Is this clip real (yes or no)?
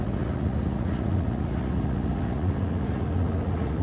no